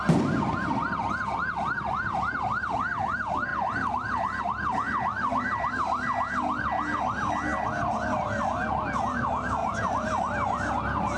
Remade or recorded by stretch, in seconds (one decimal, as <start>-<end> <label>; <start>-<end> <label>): 0.0-3.5 recorded; 3.5-4.4 remade; 4.4-5.1 recorded; 5.1-5.7 remade; 5.7-9.6 recorded; 9.6-10.7 remade; 10.7-11.2 recorded